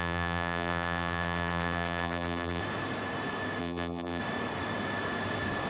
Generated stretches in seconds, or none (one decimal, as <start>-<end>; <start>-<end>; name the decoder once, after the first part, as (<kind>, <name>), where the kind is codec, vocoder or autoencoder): 0.0-2.6 (vocoder, BigVGAN v2); 3.6-4.2